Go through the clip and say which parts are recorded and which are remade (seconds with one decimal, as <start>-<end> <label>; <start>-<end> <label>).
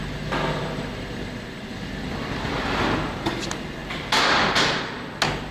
0.0-2.6 remade; 2.6-3.8 recorded; 3.8-4.8 remade; 4.8-5.5 recorded